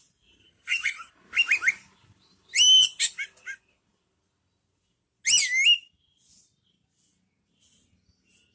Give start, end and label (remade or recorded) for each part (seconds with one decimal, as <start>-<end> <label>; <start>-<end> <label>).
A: 0.0-0.4 recorded; 0.4-1.1 remade; 1.1-8.5 recorded